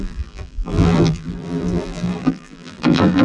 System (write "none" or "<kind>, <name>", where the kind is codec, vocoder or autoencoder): vocoder, BigVGAN v2